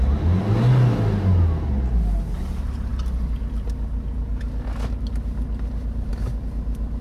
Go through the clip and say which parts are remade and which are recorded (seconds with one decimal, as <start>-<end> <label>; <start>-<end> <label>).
0.0-7.0 recorded